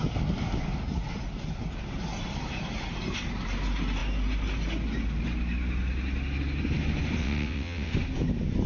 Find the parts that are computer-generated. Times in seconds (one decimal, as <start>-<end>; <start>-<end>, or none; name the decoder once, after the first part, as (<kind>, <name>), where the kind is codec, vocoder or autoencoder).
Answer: 7.2-7.9 (vocoder, WaveNeXt)

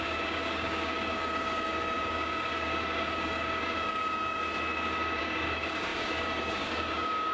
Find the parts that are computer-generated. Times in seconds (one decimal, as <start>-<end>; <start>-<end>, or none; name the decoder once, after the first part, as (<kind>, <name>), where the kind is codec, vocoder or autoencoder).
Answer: 0.0-4.4 (codec, DAC); 5.2-7.3

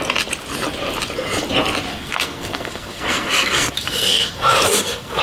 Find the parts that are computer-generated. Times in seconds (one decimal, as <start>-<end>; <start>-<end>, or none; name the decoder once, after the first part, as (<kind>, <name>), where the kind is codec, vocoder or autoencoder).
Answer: 1.9-5.2 (codec, SNAC)

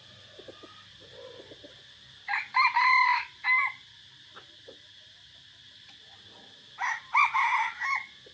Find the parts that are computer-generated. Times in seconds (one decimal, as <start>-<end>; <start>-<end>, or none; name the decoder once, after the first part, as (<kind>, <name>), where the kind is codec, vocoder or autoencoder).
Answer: none

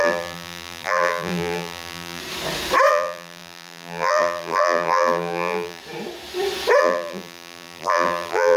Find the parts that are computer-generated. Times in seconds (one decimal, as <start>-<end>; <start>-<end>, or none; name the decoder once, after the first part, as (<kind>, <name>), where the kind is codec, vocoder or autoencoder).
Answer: 0.0-2.2 (vocoder, BigVGAN v2); 2.9-5.8; 6.8-8.6

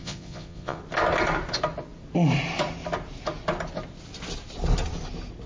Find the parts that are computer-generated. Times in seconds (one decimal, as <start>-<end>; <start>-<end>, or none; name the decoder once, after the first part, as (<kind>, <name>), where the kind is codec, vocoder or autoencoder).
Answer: 0.0-0.8 (vocoder, Vocos)

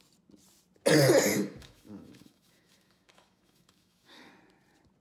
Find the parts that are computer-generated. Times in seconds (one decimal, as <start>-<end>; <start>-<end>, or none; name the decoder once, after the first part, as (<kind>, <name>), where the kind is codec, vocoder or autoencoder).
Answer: 1.3-4.3 (autoencoder, DAC-VAE)